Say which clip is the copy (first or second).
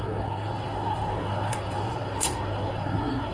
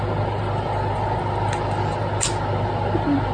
first